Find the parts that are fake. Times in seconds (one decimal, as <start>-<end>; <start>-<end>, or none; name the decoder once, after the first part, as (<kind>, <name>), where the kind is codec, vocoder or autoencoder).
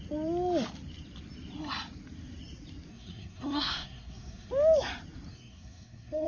2.9-4.5 (codec, SNAC); 5.3-6.3